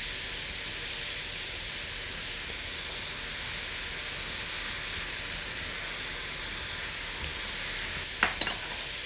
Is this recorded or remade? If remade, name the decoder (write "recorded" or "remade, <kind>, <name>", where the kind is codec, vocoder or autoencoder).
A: recorded